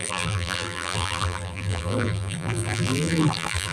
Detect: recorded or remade remade